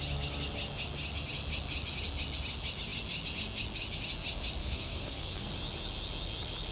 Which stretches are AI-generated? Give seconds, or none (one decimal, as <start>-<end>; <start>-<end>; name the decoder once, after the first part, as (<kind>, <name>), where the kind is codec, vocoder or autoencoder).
4.6-5.5 (codec, SNAC)